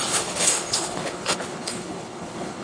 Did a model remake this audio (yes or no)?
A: yes